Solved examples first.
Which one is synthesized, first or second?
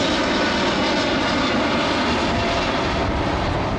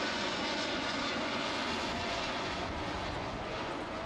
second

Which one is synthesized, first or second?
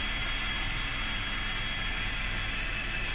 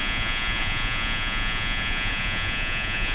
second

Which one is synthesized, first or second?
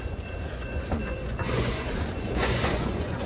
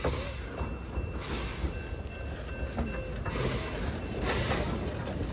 first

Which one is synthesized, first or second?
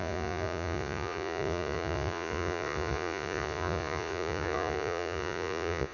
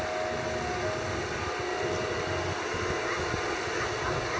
first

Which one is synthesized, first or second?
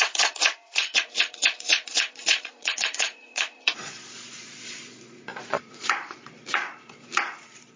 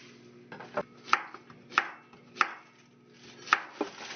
first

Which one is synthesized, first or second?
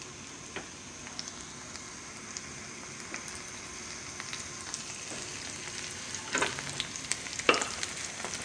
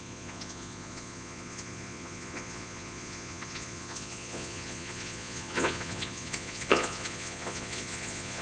second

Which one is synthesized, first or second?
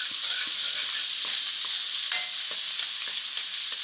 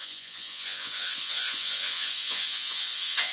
second